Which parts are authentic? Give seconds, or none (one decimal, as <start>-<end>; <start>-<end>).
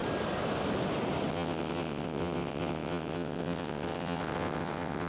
0.0-1.3